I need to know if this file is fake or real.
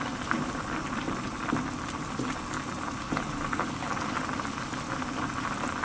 real